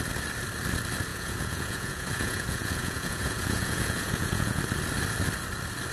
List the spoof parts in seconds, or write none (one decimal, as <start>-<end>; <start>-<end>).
1.1-4.6